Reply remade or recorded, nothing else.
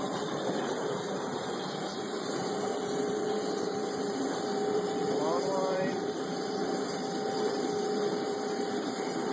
remade